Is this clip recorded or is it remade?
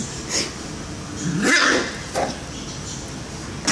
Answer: recorded